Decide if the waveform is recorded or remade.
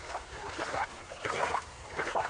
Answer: remade